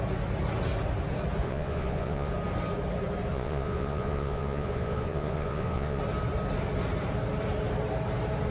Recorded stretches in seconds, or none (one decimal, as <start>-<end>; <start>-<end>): 0.0-1.4; 2.3-3.3; 6.0-8.5